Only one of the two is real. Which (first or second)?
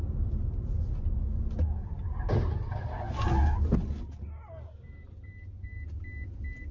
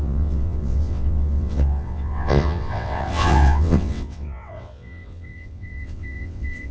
first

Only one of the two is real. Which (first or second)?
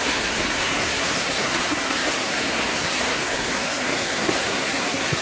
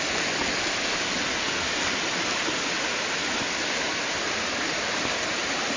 second